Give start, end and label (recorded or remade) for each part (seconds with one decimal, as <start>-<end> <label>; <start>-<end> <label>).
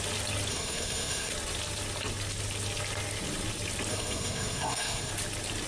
0.0-0.5 recorded; 0.5-1.3 remade; 1.3-3.9 recorded; 3.9-5.1 remade; 5.1-5.7 recorded